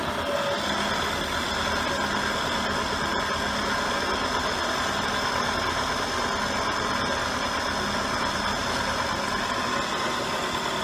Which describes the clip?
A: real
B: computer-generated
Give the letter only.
A